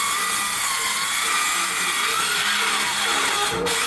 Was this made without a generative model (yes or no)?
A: yes